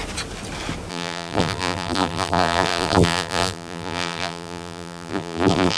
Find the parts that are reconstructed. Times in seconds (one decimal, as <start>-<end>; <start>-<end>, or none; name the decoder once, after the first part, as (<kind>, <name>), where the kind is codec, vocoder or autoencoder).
0.9-5.8 (vocoder, BigVGAN v2)